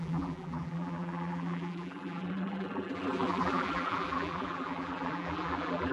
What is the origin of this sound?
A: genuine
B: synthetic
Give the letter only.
B